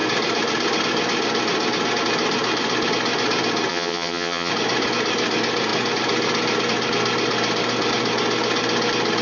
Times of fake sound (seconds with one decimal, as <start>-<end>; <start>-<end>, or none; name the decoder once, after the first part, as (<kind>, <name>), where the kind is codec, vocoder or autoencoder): 3.7-4.5 (vocoder, HiFi-GAN)